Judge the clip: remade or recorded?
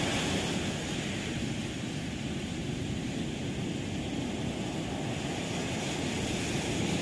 recorded